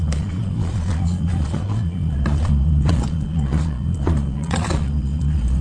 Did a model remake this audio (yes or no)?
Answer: yes